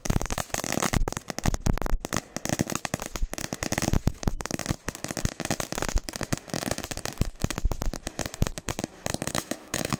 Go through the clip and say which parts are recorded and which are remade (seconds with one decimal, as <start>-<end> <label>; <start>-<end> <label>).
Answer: 0.0-0.4 remade; 0.4-4.1 recorded; 4.1-4.6 remade; 4.6-9.3 recorded; 9.3-10.0 remade